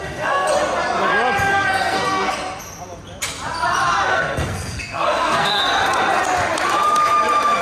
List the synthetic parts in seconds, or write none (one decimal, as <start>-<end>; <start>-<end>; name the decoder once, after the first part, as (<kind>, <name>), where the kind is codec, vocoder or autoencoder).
0.0-0.5 (codec, SNAC); 1.5-2.3; 4.1-5.6